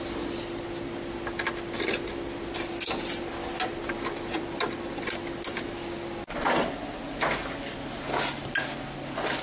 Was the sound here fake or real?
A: real